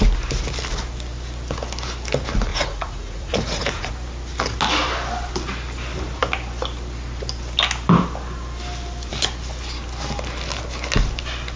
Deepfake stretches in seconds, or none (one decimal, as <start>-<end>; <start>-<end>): 2.5-3.9